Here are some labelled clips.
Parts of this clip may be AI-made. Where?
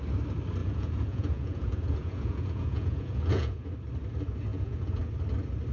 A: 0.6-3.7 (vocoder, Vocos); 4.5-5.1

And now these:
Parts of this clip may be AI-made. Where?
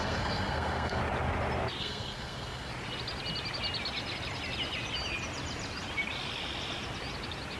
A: 0.0-1.0 (codec, SNAC); 1.8-2.7